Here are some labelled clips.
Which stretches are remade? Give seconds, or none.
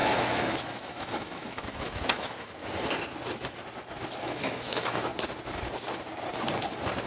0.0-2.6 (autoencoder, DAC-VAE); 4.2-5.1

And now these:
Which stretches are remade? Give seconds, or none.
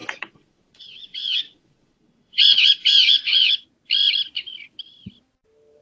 0.0-3.5 (vocoder, Vocos)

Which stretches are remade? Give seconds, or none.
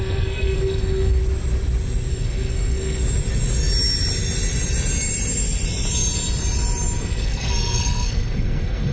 0.0-1.2 (codec, SNAC); 2.1-3.0; 7.0-8.9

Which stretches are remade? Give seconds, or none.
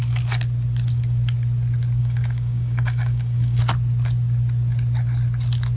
2.0-3.6 (codec, DAC)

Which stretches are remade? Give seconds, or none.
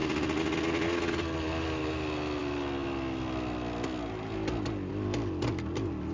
none